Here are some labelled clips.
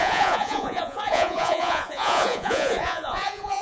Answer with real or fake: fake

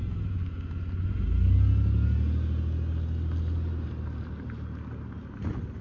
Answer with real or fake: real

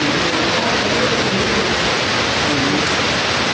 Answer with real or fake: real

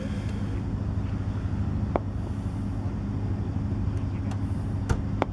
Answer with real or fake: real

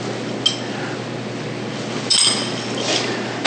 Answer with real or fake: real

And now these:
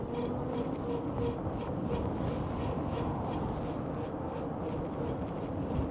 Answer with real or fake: real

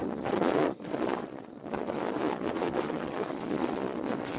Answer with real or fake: fake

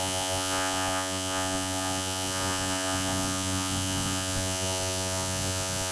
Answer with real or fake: fake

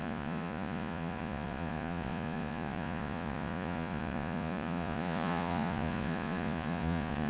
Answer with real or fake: fake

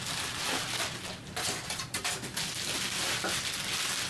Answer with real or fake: real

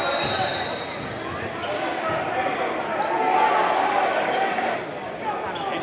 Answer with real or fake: real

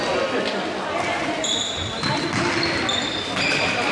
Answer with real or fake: real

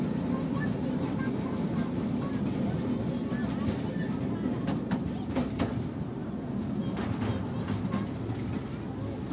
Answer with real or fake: real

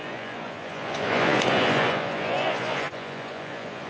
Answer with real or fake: fake